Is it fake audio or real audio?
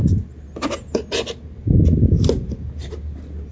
real